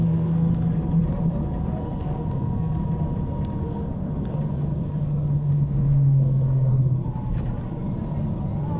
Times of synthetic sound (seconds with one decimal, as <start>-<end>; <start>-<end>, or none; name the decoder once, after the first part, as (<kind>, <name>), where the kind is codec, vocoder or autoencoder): 0.0-0.5 (codec, SNAC); 1.8-2.8; 3.6-4.1; 5.4-6.7